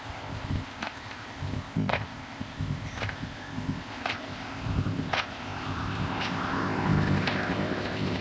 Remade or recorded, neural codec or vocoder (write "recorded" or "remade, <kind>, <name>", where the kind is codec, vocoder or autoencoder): remade, codec, ZipCodec